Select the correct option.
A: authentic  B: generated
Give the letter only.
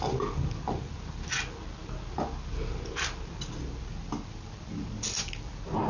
A